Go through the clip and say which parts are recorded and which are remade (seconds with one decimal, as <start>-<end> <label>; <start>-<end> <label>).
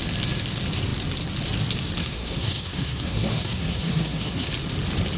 0.0-2.0 recorded; 2.0-4.5 remade; 4.5-5.2 recorded